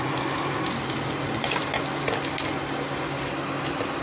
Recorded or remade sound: recorded